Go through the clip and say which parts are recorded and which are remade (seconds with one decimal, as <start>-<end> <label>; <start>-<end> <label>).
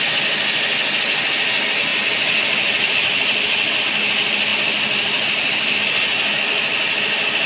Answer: 0.0-1.9 recorded; 1.9-3.8 remade; 3.8-4.5 recorded; 4.5-5.8 remade; 5.8-7.5 recorded